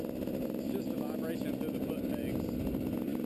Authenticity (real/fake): real